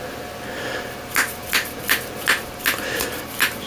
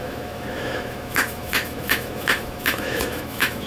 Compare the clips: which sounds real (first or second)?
first